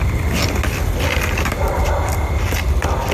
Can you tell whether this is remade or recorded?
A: recorded